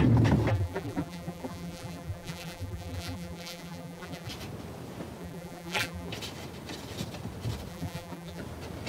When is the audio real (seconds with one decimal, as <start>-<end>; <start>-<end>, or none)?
0.0-0.5; 4.3-5.2; 6.1-7.7; 8.4-8.9